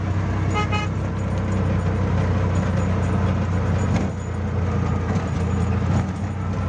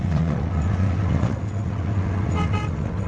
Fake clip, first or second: second